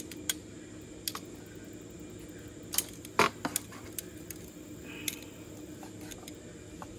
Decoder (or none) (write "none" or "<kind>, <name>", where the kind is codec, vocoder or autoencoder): none